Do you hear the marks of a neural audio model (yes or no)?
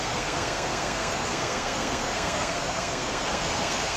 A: yes